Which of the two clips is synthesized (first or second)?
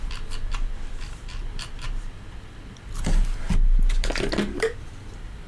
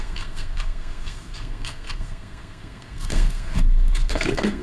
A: second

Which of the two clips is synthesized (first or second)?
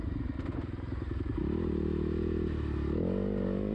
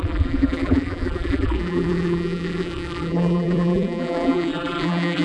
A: second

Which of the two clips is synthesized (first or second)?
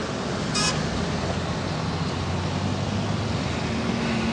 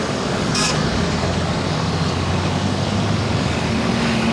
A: second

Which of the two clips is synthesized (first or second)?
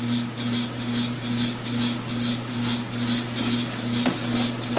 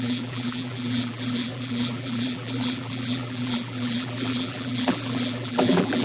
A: second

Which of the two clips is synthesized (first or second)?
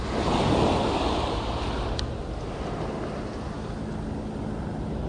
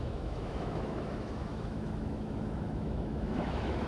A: second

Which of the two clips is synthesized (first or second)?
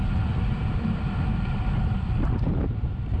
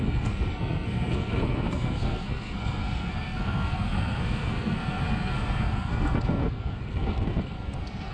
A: second